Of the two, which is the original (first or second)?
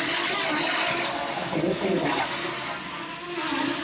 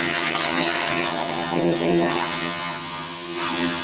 first